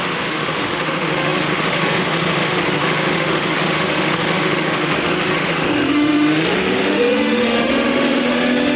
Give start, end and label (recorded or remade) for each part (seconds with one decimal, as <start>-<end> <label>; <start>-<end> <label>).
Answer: 0.0-8.8 remade